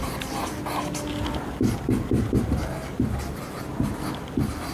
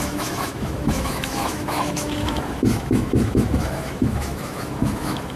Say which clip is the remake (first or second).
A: second